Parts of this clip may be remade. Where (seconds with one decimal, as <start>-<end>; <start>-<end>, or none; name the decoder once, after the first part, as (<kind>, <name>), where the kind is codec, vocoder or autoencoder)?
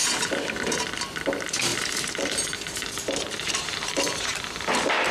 1.7-5.1 (vocoder, BigVGAN v2)